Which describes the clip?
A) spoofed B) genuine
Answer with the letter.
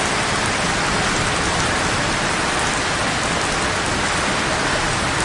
B